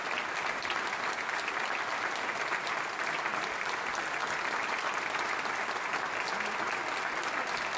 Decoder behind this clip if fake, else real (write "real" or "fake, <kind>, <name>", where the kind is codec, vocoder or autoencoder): real